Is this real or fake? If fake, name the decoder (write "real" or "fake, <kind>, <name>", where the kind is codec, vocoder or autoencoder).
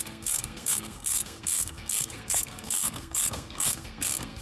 fake, codec, SNAC